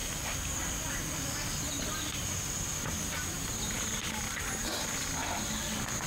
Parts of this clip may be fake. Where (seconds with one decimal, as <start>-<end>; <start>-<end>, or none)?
none